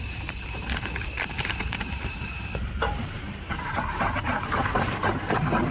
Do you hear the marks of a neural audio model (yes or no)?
yes